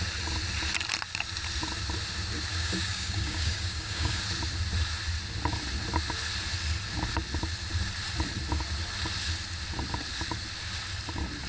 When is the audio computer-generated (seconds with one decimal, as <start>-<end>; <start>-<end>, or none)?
2.5-4.2